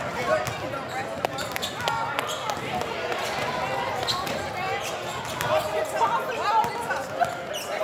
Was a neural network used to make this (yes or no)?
no